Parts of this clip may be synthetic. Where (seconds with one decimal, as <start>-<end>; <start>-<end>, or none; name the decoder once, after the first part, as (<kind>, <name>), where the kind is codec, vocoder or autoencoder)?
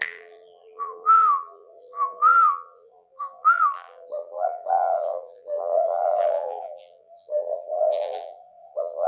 0.0-9.1 (vocoder, BigVGAN v2)